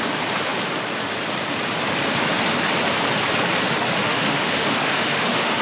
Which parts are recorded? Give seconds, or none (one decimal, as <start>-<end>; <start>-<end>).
0.0-4.0